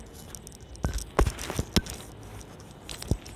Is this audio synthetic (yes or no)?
no